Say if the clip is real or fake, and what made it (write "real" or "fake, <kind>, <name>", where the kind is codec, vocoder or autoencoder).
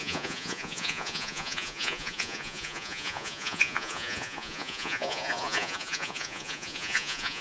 fake, vocoder, Vocos